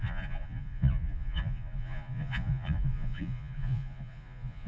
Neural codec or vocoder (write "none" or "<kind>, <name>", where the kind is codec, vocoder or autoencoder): vocoder, Vocos